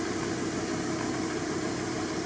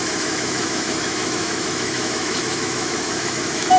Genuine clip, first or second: first